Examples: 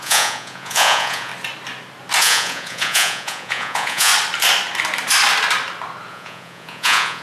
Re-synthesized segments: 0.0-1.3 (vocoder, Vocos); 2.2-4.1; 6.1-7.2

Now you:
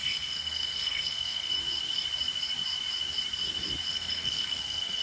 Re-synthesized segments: 0.0-1.6 (codec, SNAC); 3.9-5.0

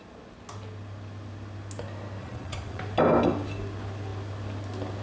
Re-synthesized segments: 2.2-2.8 (vocoder, Vocos)